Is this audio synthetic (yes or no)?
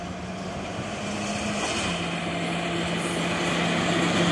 no